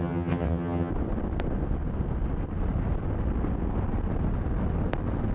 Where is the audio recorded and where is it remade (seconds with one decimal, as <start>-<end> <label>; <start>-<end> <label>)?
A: 0.0-0.9 remade; 0.9-5.3 recorded